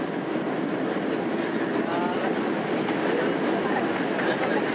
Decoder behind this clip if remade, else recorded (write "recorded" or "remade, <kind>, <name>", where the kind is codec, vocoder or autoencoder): recorded